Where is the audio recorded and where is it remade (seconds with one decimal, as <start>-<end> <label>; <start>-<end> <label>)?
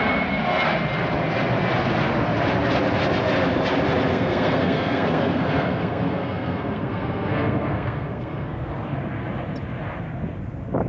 0.0-4.1 recorded; 4.1-8.7 remade; 8.7-10.9 recorded